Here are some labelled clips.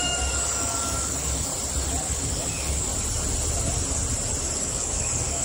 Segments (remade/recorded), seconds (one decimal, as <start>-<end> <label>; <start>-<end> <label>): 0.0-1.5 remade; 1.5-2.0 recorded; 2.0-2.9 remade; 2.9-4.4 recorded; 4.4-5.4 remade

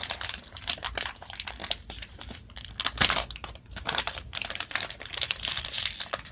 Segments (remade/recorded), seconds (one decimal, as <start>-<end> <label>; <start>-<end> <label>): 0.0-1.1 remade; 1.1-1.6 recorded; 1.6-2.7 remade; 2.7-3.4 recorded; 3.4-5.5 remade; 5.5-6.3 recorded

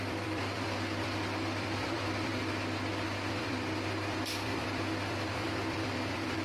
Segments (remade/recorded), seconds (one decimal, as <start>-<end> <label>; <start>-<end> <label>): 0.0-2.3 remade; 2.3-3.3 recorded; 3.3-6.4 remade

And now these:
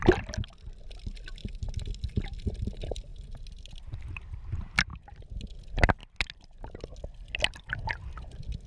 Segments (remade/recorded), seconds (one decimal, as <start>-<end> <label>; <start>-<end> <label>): 0.0-8.7 recorded